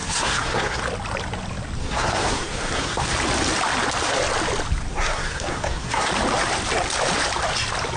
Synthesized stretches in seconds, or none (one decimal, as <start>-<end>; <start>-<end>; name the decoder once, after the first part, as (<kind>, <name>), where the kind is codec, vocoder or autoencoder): 0.0-0.8 (codec, SNAC); 1.8-3.1; 4.9-6.1